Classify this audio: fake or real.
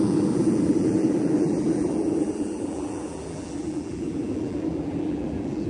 fake